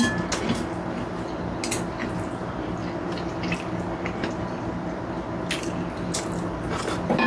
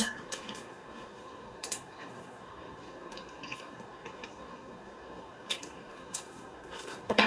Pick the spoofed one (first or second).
second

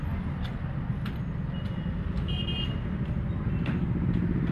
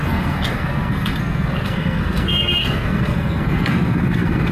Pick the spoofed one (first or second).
second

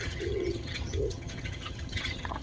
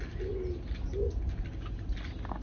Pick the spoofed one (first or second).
first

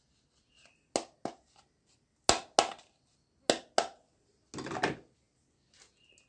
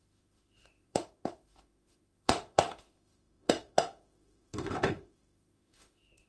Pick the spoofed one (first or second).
second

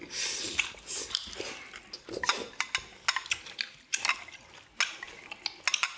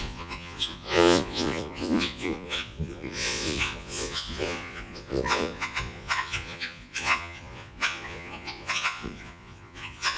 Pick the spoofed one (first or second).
second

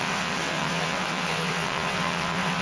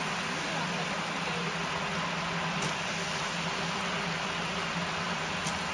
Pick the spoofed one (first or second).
first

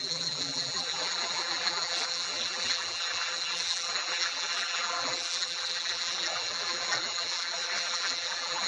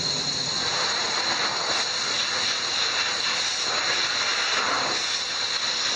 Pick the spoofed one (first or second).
first